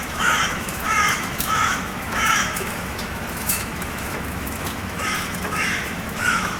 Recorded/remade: remade